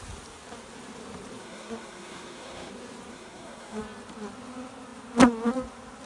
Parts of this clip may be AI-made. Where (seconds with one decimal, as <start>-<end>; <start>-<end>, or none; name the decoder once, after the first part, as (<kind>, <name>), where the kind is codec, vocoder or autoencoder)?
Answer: 1.4-2.7 (codec, SNAC); 3.1-3.8